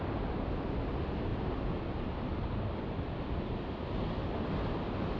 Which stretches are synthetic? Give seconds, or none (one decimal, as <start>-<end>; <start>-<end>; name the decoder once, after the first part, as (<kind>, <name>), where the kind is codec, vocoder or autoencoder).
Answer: none